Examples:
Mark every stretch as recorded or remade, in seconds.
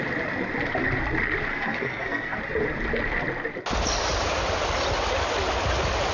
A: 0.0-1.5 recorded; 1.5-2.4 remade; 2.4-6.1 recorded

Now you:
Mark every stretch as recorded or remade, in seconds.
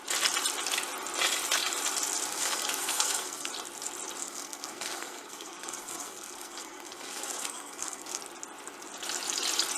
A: 0.0-2.3 recorded; 2.3-3.5 remade; 3.5-4.2 recorded; 4.2-8.2 remade; 8.2-9.8 recorded